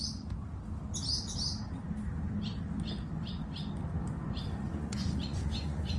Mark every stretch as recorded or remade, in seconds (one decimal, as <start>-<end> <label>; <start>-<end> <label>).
0.0-4.6 recorded; 4.6-6.0 remade